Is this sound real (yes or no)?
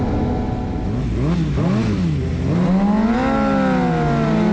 yes